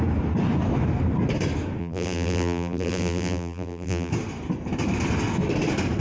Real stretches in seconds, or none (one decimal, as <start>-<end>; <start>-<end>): 0.0-1.8; 4.1-6.0